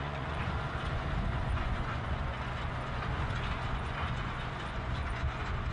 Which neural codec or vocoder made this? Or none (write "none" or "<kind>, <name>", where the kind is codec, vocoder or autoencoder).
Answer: vocoder, Vocos